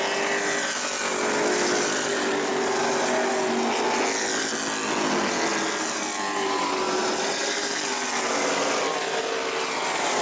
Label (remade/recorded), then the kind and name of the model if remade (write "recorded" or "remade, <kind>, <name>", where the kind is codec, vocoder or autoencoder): recorded